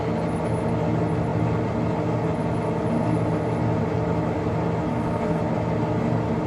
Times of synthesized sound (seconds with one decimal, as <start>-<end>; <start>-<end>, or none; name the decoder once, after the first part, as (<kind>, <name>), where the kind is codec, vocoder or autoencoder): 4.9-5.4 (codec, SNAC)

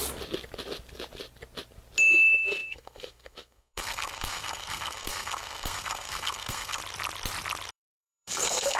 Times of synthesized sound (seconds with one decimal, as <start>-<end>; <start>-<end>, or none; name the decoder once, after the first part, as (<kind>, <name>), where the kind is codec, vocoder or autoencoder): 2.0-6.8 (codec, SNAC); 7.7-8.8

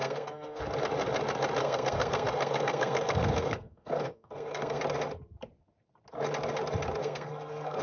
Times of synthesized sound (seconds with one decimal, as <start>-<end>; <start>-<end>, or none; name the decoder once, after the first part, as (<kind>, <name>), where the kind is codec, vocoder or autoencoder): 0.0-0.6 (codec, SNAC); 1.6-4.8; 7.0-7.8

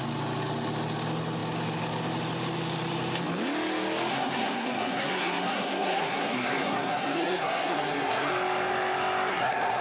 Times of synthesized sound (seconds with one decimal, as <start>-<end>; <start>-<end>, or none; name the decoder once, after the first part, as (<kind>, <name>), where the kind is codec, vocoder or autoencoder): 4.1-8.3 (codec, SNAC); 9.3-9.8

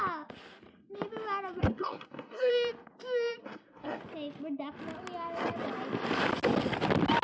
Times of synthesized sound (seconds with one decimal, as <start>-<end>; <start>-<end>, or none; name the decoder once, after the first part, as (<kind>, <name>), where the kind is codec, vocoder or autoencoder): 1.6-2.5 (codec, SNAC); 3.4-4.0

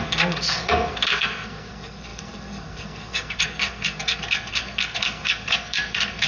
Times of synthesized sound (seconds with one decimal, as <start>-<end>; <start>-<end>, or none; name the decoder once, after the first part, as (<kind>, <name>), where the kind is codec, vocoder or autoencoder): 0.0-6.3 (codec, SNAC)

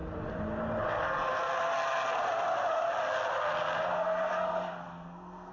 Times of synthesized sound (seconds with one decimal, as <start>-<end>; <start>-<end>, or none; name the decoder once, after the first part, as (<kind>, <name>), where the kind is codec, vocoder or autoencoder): 3.9-5.5 (codec, SNAC)

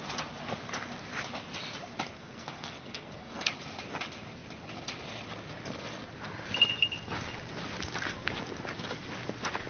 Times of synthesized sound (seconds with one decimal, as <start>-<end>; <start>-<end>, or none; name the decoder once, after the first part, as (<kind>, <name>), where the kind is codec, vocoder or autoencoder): 2.1-3.5 (codec, SNAC)